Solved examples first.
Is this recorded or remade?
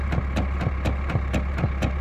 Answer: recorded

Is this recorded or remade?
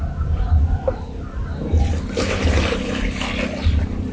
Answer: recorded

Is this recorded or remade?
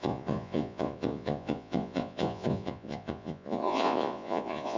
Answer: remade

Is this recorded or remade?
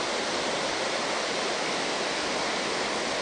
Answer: recorded